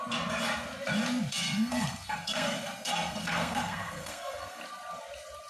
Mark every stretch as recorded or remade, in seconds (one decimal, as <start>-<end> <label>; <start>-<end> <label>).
0.0-1.3 recorded; 1.3-4.6 remade; 4.6-5.5 recorded